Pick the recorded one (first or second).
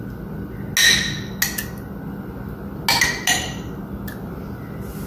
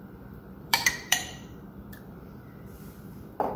first